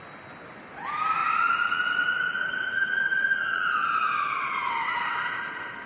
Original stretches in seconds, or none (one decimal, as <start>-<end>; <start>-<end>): 0.0-1.2; 4.7-5.9